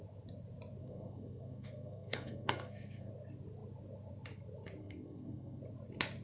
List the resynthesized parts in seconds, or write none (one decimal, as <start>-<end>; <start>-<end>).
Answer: 0.8-3.1; 4.8-5.6